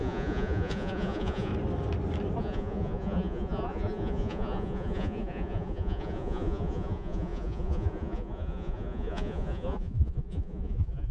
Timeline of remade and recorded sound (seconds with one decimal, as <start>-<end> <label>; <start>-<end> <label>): 0.0-1.5 remade; 1.5-2.4 recorded; 2.4-11.1 remade

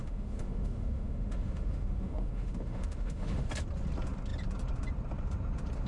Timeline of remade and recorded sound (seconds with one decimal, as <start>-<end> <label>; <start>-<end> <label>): 0.0-3.5 remade; 3.5-5.9 recorded

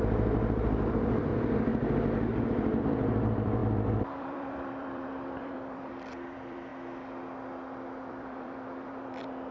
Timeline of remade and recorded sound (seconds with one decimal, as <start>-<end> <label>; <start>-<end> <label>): 0.0-1.3 remade; 1.3-2.8 recorded; 2.8-3.6 remade; 3.6-4.2 recorded; 4.2-6.7 remade; 6.7-8.1 recorded; 8.1-9.5 remade

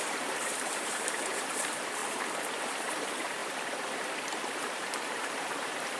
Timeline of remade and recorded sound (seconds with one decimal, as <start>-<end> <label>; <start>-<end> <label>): 0.0-2.0 remade; 2.0-2.5 recorded; 2.5-6.0 remade

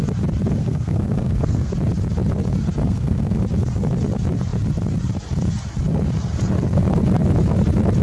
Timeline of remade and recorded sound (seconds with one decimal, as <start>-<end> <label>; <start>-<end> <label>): 0.0-0.6 recorded; 0.6-1.7 remade; 1.7-2.8 recorded; 2.8-3.4 remade; 3.4-8.0 recorded